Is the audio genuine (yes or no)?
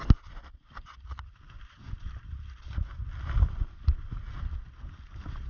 yes